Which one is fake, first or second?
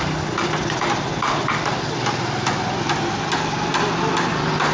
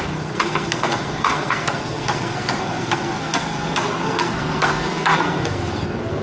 second